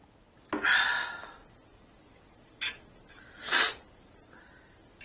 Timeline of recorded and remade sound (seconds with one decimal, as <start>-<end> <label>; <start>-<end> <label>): 0.0-5.0 recorded

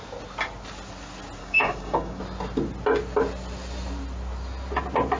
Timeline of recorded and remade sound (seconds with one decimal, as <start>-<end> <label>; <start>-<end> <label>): 0.0-1.4 recorded; 1.4-2.2 remade; 2.2-5.2 recorded